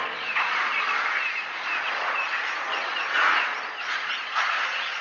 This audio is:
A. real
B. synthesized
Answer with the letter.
B